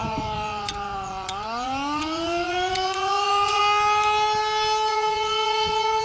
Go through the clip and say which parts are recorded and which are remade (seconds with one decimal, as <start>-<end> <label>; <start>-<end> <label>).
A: 0.0-3.6 remade; 3.6-4.9 recorded; 4.9-6.0 remade